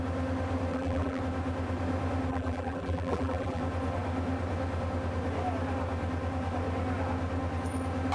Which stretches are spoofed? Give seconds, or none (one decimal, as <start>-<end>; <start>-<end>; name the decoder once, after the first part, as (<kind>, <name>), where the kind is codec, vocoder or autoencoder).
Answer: 0.7-1.2 (vocoder, BigVGAN v2); 2.3-3.6